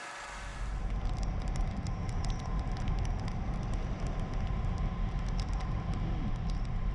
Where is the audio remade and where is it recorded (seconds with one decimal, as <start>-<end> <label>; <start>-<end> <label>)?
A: 0.0-6.9 recorded